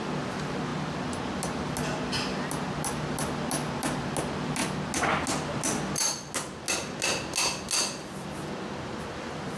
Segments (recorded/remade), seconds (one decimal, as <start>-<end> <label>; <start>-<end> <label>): 0.0-9.6 recorded